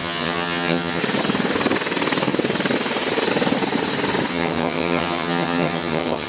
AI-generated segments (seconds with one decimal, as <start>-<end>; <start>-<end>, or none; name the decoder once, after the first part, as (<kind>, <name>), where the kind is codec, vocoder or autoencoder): 0.0-1.0 (vocoder, HiFi-GAN); 4.3-6.3